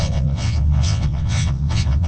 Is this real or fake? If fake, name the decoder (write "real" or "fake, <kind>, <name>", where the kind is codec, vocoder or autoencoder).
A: fake, vocoder, WaveNeXt